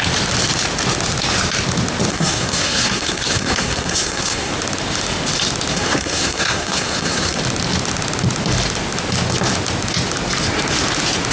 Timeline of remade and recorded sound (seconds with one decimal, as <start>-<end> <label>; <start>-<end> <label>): 0.0-2.1 recorded; 2.1-4.5 remade; 4.5-5.7 recorded; 5.7-7.4 remade; 7.4-11.3 recorded